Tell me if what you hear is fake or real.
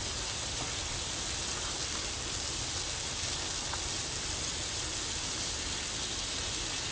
real